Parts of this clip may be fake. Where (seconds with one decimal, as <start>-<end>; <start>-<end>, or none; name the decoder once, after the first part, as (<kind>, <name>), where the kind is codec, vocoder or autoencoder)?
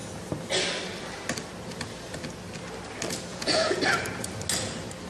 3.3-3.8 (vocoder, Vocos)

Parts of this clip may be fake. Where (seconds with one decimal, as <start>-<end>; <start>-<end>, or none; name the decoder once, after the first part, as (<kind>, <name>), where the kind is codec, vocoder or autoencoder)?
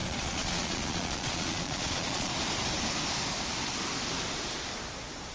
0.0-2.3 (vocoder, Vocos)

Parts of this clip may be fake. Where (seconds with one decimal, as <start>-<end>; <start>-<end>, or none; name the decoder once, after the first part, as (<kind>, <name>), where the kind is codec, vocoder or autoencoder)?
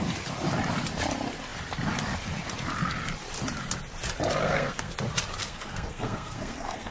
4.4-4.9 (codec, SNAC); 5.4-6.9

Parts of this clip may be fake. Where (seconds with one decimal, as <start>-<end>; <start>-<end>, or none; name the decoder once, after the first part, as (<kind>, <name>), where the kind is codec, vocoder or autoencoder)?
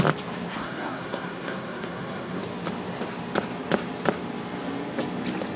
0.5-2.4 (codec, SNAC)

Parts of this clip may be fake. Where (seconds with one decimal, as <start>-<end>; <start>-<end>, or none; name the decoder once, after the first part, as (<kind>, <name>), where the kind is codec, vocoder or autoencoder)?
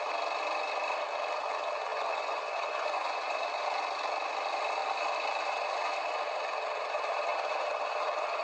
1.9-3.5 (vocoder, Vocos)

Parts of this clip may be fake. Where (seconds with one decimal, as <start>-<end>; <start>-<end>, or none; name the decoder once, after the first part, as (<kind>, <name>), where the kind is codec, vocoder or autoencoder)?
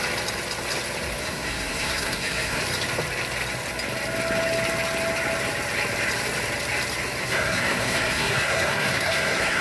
1.2-2.6 (codec, SNAC); 7.2-9.6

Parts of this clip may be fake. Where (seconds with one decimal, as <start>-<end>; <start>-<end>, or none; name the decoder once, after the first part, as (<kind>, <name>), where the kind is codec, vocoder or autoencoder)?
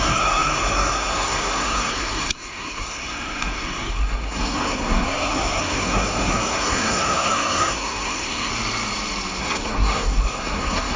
0.0-8.5 (codec, SNAC); 9.4-11.0